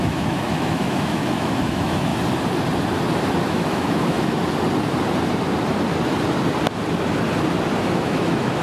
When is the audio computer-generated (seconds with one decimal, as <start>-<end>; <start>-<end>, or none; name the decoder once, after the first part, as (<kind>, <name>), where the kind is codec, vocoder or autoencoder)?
0.0-2.1 (autoencoder, DAC-VAE); 3.5-4.4; 7.9-8.6